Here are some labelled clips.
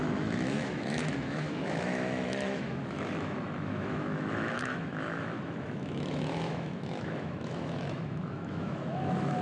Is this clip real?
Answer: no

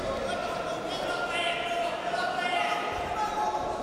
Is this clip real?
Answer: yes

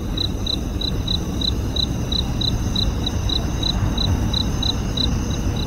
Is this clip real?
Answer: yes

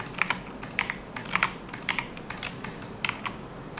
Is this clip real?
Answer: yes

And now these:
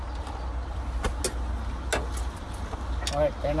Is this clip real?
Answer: yes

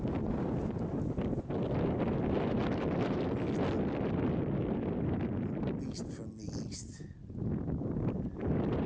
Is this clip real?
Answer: yes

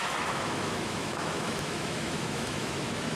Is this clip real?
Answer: no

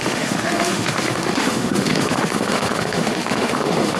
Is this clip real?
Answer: no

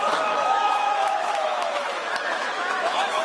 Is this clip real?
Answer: no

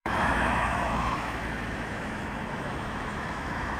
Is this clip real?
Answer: no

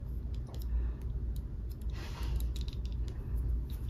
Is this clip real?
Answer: yes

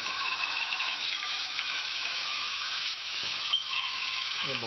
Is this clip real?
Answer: no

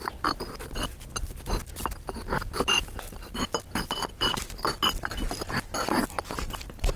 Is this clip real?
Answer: yes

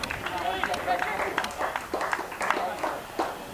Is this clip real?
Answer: yes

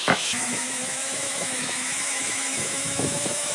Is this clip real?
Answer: no